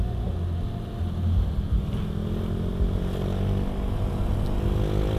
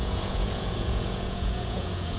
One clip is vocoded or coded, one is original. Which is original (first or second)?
first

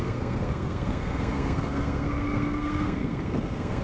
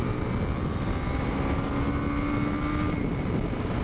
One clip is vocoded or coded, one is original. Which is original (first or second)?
second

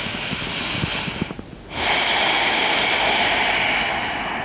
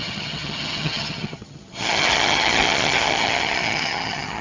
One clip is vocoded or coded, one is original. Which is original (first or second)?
first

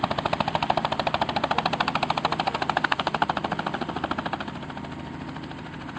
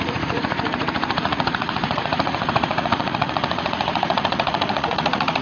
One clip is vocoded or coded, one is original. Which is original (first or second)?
first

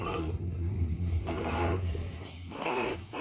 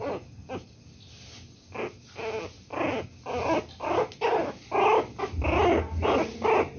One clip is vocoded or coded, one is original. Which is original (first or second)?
second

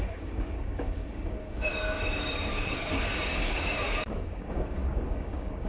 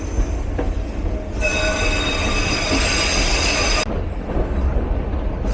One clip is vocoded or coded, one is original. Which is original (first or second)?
second